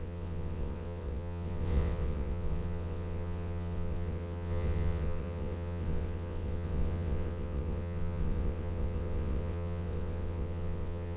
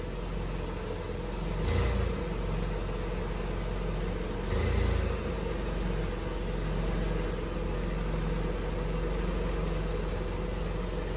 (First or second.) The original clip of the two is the second